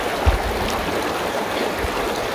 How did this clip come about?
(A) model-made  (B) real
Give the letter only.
B